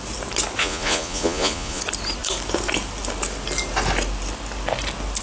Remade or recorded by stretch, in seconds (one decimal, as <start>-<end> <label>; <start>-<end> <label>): 0.0-0.6 recorded; 0.6-1.8 remade; 1.8-5.2 recorded